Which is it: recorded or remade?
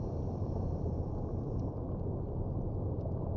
recorded